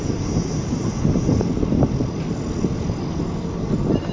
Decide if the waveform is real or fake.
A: real